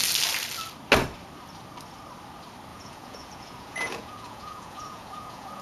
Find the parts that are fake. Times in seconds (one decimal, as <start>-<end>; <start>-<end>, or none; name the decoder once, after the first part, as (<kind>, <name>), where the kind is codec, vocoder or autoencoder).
2.7-5.6 (vocoder, Vocos)